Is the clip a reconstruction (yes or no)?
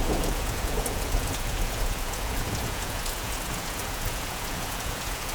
yes